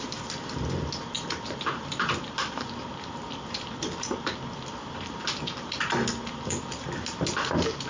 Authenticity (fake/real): real